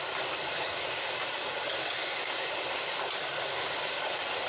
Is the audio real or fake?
real